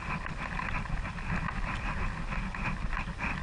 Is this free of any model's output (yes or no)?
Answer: yes